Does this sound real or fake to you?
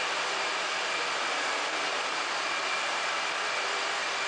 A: fake